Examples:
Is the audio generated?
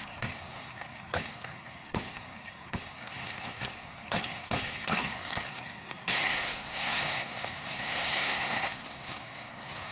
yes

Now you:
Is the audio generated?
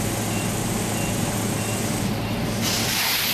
no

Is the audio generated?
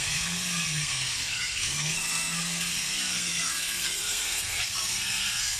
yes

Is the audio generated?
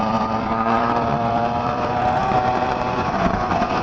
yes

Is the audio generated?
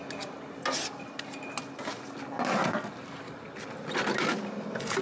no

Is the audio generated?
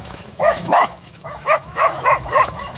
yes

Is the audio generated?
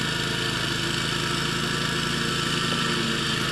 no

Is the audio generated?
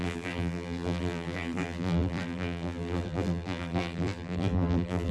yes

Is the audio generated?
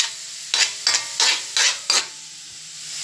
no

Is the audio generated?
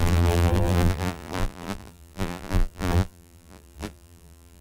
yes